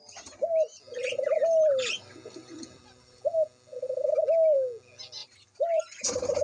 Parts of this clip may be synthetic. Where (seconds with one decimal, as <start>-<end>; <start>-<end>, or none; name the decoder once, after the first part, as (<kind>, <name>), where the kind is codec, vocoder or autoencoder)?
1.0-4.2 (vocoder, BigVGAN v2); 5.2-6.4